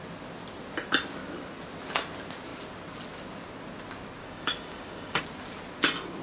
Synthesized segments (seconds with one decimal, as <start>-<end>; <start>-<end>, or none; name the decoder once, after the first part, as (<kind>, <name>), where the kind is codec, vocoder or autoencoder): 4.2-5.2 (codec, DAC)